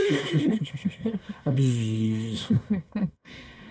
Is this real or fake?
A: fake